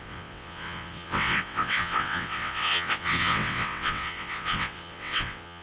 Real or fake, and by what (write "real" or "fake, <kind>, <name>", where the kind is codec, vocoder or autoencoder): fake, vocoder, WaveNeXt